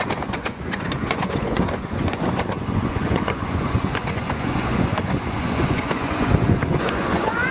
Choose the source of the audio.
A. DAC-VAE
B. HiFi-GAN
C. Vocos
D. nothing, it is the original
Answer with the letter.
C